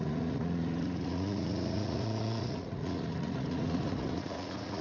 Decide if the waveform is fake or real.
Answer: fake